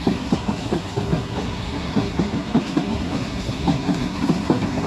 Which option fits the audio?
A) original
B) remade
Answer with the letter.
B